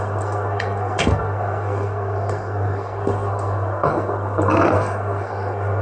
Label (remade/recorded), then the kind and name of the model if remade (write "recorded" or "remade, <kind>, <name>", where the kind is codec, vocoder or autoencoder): remade, codec, SNAC